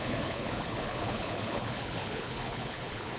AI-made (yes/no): yes